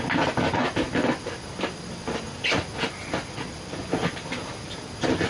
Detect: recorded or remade recorded